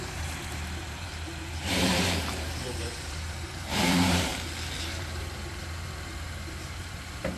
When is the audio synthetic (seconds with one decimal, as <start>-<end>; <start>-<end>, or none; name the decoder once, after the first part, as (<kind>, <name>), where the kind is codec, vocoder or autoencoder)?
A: 0.0-4.3 (vocoder, BigVGAN v2); 4.8-7.4